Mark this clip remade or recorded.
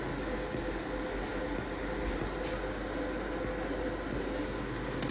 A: recorded